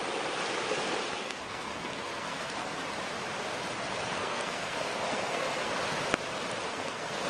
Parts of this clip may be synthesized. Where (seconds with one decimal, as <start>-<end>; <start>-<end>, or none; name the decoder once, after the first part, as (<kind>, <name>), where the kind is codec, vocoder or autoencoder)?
1.2-2.8 (codec, SNAC); 4.0-5.7; 6.7-7.3